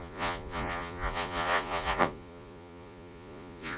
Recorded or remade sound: remade